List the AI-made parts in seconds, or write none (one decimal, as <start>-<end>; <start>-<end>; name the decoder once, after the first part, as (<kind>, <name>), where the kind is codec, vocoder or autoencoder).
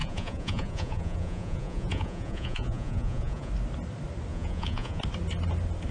0.0-3.5 (vocoder, Vocos); 4.3-5.0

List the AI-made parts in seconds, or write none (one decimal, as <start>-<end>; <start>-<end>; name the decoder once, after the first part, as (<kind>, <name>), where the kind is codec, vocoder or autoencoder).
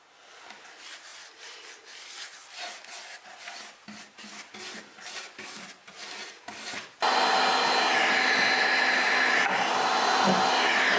none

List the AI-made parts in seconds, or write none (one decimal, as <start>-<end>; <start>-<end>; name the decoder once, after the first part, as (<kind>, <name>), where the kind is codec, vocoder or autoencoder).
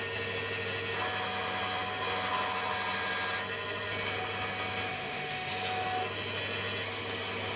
4.9-5.5 (autoencoder, DAC-VAE)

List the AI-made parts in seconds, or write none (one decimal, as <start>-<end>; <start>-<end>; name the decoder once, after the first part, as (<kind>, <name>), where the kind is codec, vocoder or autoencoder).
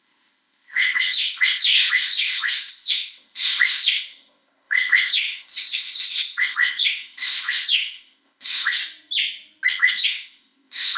0.0-8.8 (codec, ZipCodec); 9.7-11.0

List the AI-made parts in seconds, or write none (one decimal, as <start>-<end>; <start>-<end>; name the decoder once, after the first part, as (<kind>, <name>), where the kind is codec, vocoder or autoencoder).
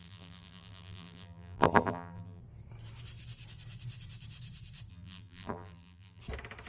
0.0-2.4 (vocoder, BigVGAN v2); 4.9-6.2